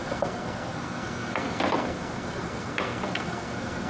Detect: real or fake fake